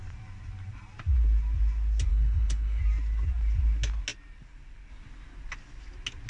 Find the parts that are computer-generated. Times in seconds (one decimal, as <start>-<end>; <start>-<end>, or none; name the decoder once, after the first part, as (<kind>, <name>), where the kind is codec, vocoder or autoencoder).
2.1-2.8 (codec, HILCodec)